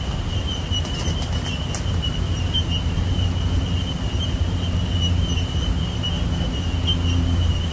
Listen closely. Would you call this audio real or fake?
real